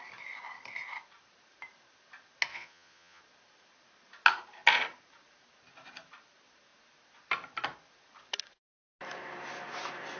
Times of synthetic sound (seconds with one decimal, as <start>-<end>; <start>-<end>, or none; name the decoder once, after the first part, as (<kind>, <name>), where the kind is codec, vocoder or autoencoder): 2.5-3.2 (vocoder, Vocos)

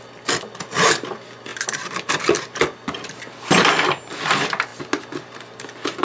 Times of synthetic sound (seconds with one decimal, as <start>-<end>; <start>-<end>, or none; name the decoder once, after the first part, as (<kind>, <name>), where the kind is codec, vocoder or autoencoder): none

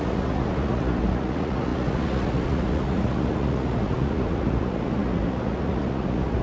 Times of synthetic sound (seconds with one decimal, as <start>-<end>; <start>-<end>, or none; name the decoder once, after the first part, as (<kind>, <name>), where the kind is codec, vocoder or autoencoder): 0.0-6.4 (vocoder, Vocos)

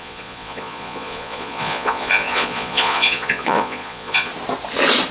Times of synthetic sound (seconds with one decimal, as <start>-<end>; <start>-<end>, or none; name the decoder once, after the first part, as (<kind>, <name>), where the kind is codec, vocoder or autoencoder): 0.0-4.3 (vocoder, Vocos)

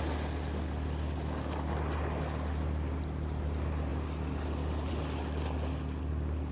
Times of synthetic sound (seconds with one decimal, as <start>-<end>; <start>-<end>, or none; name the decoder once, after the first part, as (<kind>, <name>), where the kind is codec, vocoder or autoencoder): none

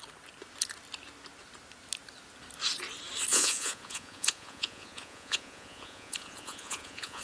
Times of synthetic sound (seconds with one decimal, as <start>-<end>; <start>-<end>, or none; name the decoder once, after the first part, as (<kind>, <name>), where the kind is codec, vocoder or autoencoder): 3.3-7.2 (vocoder, Vocos)